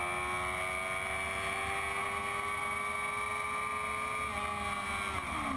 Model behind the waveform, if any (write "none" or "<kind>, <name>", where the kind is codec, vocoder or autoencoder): none